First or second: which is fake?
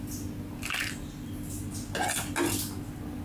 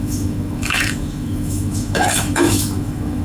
second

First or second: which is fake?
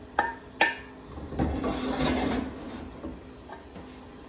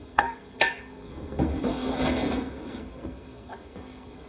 second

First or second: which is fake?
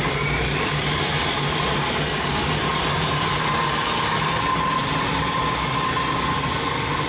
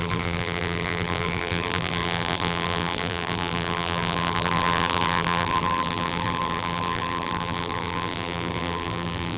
second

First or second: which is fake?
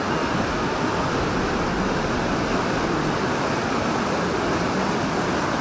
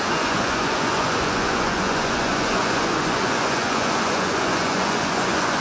second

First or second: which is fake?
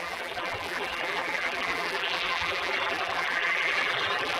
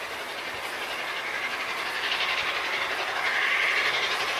first